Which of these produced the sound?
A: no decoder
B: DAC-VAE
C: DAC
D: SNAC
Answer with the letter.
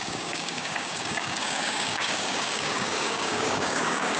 C